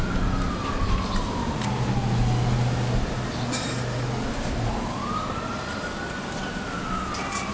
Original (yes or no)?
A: yes